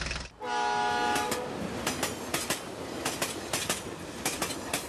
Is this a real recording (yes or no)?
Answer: yes